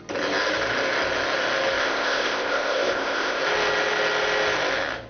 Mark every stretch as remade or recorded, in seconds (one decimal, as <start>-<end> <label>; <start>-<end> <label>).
0.0-1.8 recorded; 1.8-3.4 remade; 3.4-5.1 recorded